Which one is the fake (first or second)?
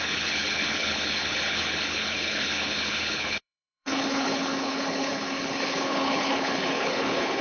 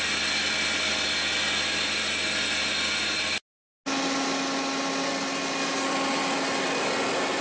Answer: first